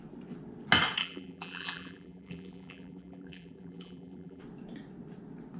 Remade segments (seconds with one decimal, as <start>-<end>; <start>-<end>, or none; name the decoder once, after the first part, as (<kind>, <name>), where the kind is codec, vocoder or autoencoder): 1.0-4.4 (vocoder, BigVGAN v2)